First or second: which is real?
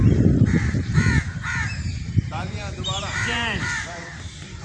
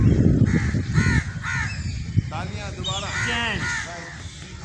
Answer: second